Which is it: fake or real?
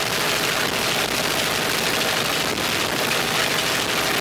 real